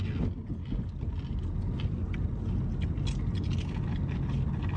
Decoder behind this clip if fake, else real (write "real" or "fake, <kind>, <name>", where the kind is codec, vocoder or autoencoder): real